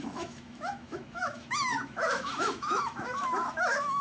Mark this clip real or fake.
fake